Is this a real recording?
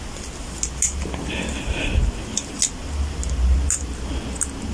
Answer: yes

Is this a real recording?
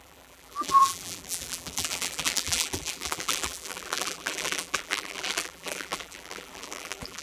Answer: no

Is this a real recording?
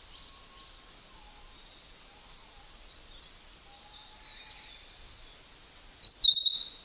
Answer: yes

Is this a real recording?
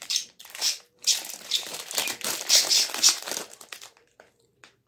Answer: no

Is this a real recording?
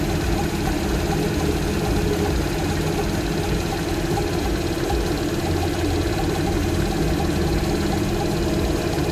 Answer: yes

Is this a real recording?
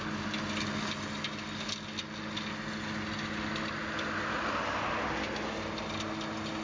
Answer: yes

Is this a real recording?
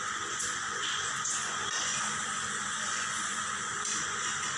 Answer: no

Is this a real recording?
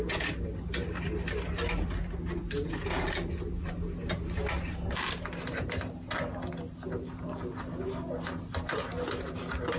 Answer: yes